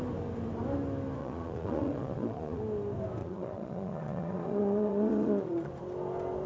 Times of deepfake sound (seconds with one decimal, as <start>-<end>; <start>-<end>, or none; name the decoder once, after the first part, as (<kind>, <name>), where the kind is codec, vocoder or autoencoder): 1.2-2.6 (vocoder, Vocos); 3.2-5.7